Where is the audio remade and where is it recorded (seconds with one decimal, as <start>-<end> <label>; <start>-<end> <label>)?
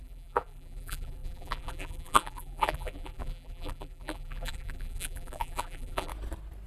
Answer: 0.0-6.1 remade; 6.1-6.7 recorded